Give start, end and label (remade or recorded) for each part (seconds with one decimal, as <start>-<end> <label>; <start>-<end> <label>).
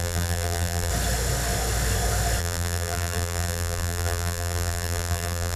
0.0-0.9 remade; 0.9-2.4 recorded; 2.4-5.6 remade